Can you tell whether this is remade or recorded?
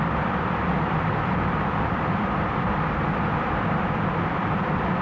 remade